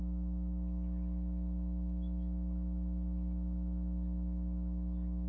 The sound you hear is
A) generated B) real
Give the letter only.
B